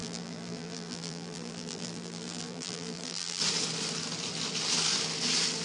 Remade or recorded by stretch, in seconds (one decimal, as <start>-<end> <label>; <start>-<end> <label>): 0.0-3.4 remade; 3.4-5.6 recorded